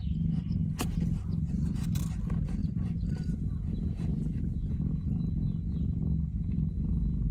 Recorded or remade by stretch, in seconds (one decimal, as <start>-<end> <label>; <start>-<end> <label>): 0.0-2.6 recorded; 2.6-4.7 remade; 4.7-7.3 recorded

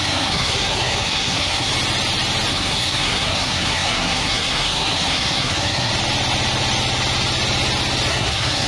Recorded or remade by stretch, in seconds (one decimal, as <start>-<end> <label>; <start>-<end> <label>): 0.0-1.7 remade; 1.7-2.5 recorded; 2.5-5.9 remade; 5.9-8.1 recorded; 8.1-8.7 remade

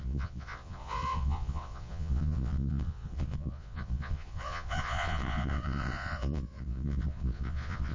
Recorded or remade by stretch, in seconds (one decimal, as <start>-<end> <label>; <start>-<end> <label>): 0.0-7.9 remade

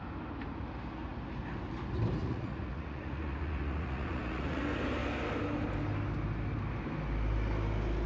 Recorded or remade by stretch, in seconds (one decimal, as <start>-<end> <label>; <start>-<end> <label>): 0.0-2.2 recorded; 2.2-4.6 remade; 4.6-8.1 recorded

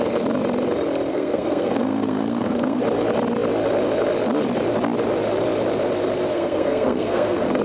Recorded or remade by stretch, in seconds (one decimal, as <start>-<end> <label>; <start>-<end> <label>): 0.0-1.1 recorded; 1.1-2.8 remade; 2.8-6.3 recorded; 6.3-7.6 remade

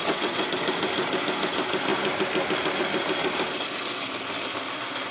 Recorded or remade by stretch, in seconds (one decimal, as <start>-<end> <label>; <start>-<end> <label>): 0.0-0.5 remade; 0.5-5.1 recorded